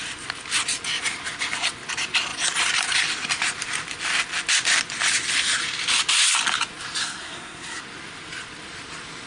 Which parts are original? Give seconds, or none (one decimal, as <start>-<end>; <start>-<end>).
0.0-7.0; 7.8-9.3